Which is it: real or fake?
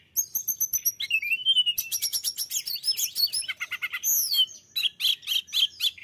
real